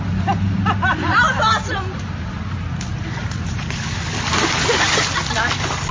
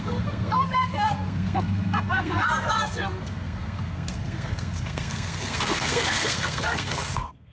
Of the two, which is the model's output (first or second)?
second